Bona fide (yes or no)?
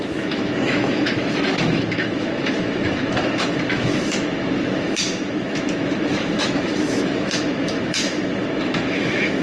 no